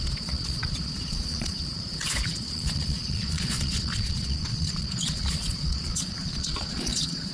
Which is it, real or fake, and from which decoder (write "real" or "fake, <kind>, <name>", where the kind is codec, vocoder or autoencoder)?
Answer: fake, vocoder, Vocos